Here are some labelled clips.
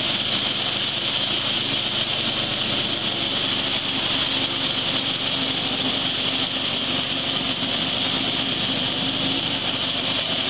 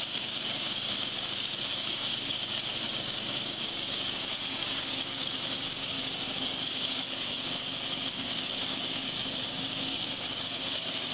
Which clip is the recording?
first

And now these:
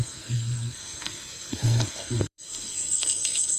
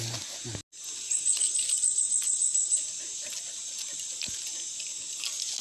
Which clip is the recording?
second